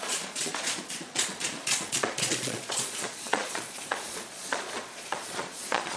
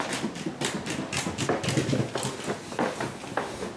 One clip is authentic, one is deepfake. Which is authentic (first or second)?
second